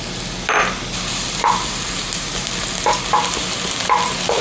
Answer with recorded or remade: recorded